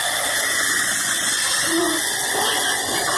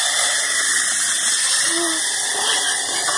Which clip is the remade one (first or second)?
first